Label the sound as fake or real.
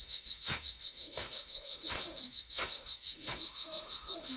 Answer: fake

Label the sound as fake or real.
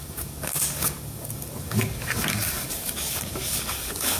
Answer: fake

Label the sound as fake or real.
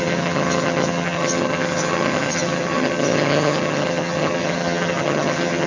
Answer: fake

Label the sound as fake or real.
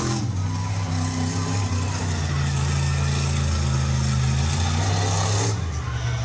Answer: real